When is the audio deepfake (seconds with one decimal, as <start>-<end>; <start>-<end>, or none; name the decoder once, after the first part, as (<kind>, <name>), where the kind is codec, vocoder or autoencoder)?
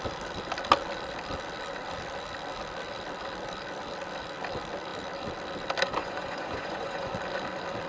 6.0-7.1 (vocoder, Vocos)